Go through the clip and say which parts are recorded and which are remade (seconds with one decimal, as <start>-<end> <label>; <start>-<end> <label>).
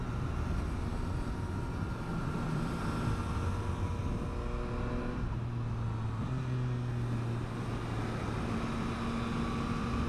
0.0-10.1 recorded